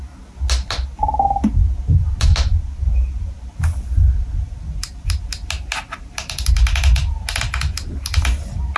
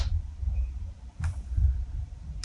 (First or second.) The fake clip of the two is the second